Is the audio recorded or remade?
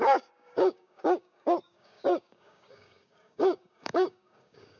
remade